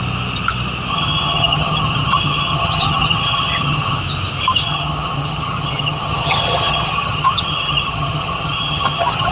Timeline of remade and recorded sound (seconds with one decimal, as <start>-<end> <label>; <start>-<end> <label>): 0.0-0.9 recorded; 0.9-4.0 remade; 4.0-4.6 recorded; 4.6-9.3 remade